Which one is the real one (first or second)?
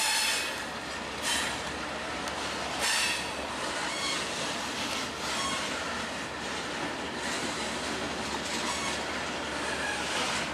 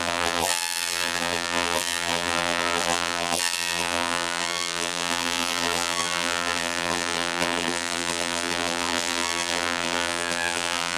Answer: first